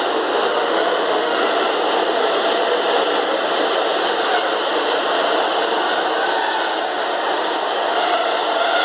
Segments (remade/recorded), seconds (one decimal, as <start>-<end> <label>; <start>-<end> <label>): 0.0-0.5 recorded; 0.5-1.4 remade; 1.4-8.8 recorded